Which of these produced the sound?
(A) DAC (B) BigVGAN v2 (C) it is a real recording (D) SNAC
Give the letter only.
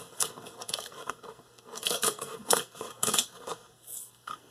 D